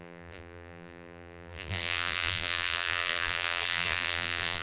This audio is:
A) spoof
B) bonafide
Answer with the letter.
A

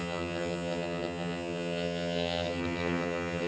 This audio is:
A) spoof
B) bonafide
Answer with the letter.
A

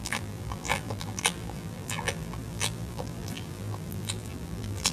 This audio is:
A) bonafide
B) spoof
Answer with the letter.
B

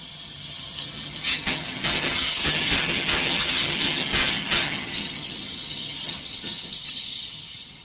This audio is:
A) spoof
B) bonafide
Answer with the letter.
A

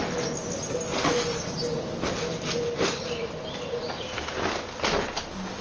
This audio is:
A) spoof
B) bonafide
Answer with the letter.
B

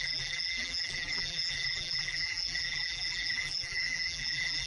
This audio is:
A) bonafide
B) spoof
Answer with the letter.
B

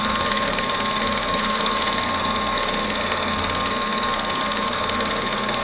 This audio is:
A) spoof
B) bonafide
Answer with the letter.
A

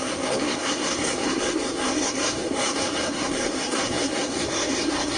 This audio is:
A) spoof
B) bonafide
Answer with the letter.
A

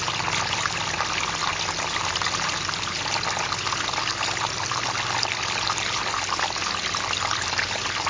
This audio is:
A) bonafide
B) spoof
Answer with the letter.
A